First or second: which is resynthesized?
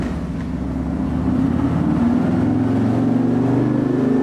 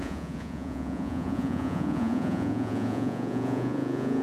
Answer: second